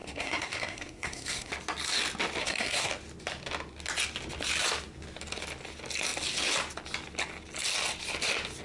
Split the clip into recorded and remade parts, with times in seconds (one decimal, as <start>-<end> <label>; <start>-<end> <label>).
0.0-1.5 remade; 1.5-2.4 recorded; 2.4-2.9 remade; 2.9-8.6 recorded

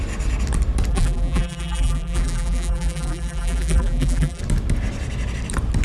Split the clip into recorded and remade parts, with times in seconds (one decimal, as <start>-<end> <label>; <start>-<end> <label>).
0.0-0.9 recorded; 0.9-4.4 remade; 4.4-5.8 recorded